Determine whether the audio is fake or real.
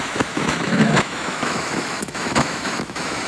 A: fake